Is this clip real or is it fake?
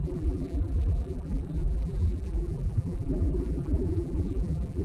fake